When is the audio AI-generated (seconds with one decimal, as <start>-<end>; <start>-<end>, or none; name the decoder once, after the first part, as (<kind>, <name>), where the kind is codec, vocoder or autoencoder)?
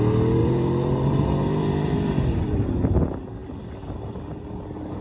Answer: 0.4-2.7 (vocoder, BigVGAN v2)